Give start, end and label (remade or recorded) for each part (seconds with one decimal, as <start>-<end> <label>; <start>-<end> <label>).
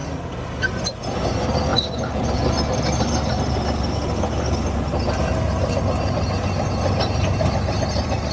0.0-0.8 remade; 0.8-8.3 recorded